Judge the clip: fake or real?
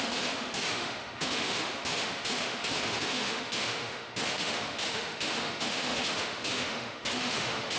fake